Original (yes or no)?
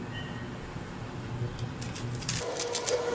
yes